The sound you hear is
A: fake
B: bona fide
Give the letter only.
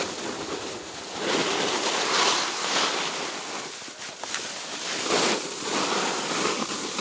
B